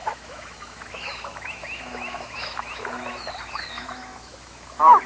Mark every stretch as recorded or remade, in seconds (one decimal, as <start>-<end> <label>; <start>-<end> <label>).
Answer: 0.0-5.1 remade